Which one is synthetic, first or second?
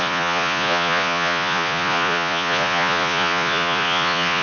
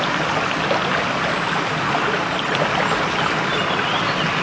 first